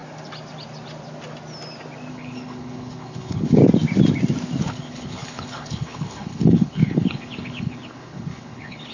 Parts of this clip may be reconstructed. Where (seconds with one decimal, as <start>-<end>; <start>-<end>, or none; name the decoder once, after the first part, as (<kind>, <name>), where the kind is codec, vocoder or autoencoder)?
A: 2.1-3.6 (codec, HILCodec); 4.6-8.9